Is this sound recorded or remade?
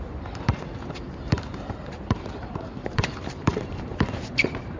remade